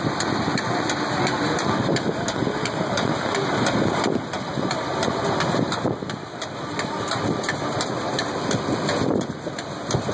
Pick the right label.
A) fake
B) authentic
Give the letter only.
B